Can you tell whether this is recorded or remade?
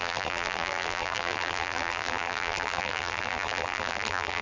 remade